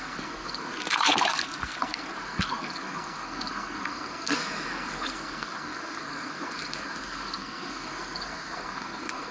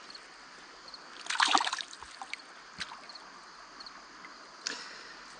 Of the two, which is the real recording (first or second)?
second